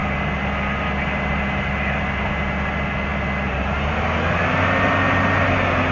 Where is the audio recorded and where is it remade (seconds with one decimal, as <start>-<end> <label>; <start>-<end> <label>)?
0.0-5.9 recorded